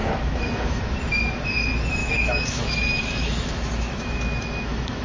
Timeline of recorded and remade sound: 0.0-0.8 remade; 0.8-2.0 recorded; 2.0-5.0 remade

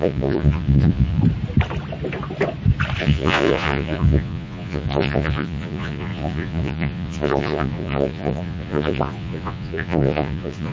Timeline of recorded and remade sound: 0.0-1.2 remade; 1.2-3.0 recorded; 3.0-10.7 remade

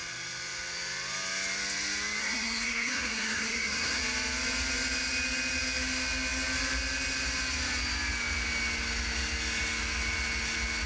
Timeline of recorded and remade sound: 0.0-2.2 recorded; 2.2-4.0 remade; 4.0-10.9 recorded